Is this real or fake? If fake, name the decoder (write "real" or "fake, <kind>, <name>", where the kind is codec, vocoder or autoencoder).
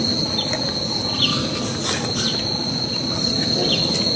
real